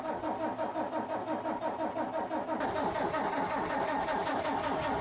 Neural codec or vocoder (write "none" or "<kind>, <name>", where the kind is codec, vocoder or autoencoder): none